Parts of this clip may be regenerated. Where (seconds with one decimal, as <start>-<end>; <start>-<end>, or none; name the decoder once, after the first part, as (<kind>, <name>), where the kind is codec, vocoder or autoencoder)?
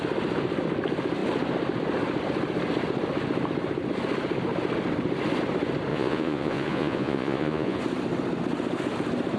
5.9-7.8 (vocoder, Vocos)